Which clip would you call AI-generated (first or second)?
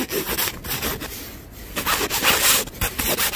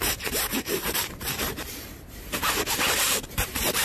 second